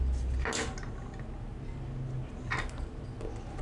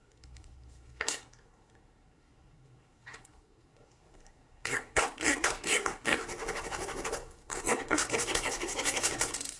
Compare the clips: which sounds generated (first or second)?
second